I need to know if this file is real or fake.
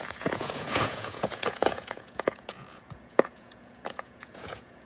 fake